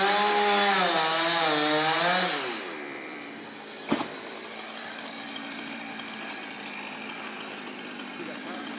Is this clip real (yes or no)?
yes